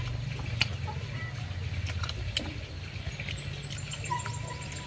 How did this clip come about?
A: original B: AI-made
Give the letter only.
A